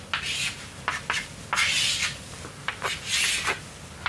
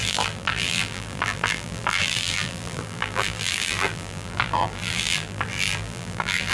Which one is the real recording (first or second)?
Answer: first